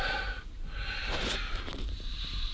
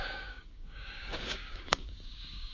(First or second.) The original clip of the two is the first